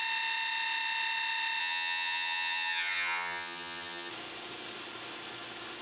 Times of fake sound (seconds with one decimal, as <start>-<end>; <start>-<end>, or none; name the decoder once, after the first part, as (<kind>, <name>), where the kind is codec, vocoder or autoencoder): 1.6-4.1 (vocoder, HiFi-GAN)